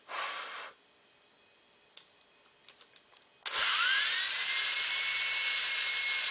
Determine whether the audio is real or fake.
real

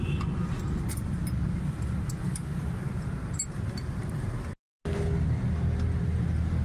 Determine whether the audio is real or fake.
real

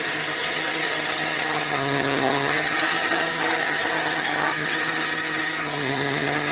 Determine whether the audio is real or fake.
fake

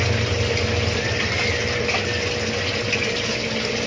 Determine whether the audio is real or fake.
real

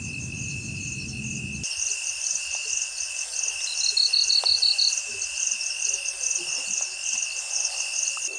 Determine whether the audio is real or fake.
real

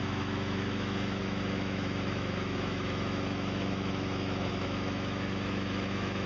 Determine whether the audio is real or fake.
fake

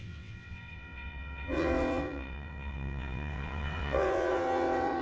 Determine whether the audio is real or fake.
fake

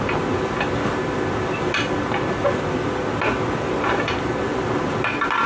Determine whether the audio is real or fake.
real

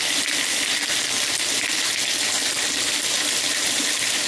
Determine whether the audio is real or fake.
real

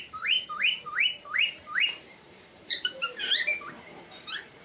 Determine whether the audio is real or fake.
fake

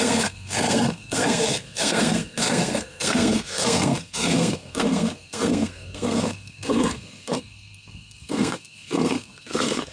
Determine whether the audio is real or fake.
fake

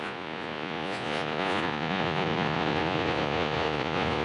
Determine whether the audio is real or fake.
fake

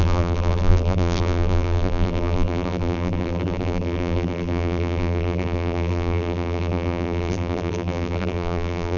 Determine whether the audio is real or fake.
fake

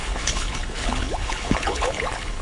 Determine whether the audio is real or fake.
fake